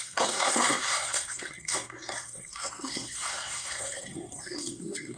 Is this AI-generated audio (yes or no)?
yes